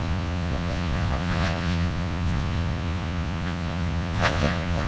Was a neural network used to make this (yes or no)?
yes